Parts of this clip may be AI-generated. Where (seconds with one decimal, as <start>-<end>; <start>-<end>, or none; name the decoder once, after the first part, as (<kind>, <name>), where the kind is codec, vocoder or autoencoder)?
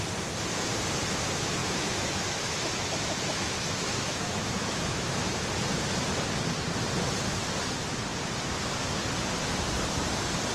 1.6-5.4 (autoencoder, DAC-VAE)